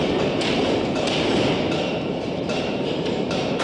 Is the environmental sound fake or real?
fake